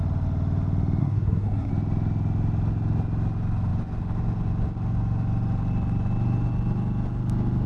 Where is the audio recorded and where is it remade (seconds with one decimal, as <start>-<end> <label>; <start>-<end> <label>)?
0.0-1.0 recorded; 1.0-1.7 remade; 1.7-7.7 recorded